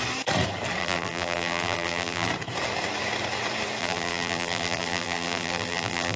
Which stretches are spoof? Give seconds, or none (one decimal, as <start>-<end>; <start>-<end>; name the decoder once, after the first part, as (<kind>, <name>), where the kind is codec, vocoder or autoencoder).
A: 0.8-2.3 (vocoder, BigVGAN v2); 3.8-6.2